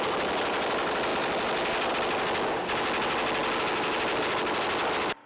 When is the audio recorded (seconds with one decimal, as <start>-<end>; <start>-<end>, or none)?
0.0-5.3